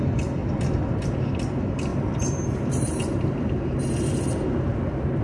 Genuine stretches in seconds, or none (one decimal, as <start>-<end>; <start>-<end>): 0.0-0.4; 1.0-1.9; 3.3-5.2